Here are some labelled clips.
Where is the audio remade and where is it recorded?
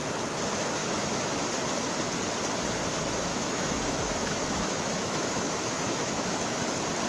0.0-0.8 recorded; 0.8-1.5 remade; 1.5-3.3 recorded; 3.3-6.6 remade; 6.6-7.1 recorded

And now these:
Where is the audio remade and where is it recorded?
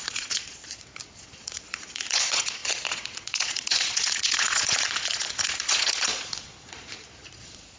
0.0-7.8 remade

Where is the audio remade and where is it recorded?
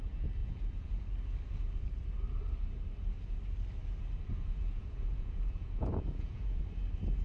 0.0-0.4 recorded; 0.4-1.1 remade; 1.1-4.3 recorded; 4.3-6.6 remade; 6.6-7.2 recorded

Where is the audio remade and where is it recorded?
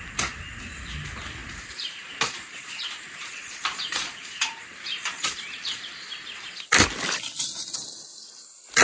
0.0-1.4 recorded; 1.4-6.1 remade; 6.1-8.8 recorded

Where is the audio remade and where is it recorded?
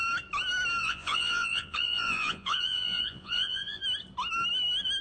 0.0-0.8 recorded; 0.8-3.8 remade; 3.8-5.0 recorded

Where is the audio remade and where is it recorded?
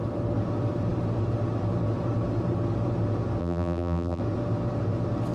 0.0-3.4 recorded; 3.4-4.2 remade; 4.2-5.3 recorded